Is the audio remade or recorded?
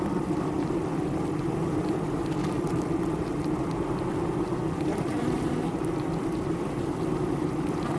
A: remade